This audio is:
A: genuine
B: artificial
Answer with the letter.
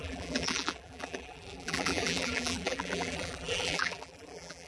B